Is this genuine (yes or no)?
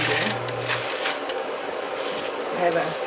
no